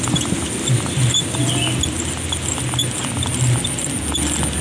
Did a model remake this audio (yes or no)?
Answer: no